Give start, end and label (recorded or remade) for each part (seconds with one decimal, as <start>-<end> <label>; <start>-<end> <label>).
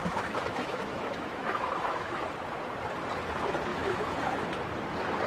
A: 0.0-2.2 remade; 2.2-3.7 recorded; 3.7-4.2 remade; 4.2-5.3 recorded